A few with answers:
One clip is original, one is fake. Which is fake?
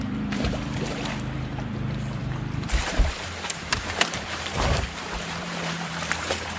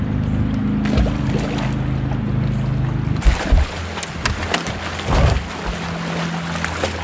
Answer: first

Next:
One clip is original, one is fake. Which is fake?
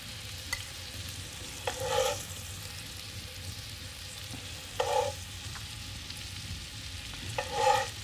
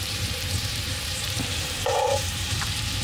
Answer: second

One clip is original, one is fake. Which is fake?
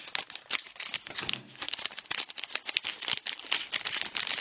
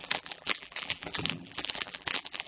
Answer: second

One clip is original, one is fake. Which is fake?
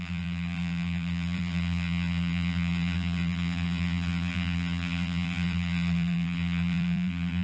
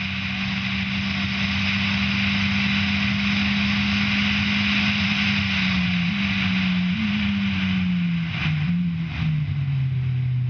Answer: first